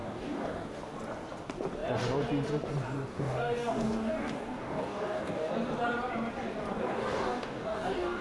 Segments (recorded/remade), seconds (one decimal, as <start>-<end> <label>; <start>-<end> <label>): 0.0-0.8 remade; 0.8-3.1 recorded; 3.1-5.5 remade; 5.5-6.8 recorded; 6.8-8.2 remade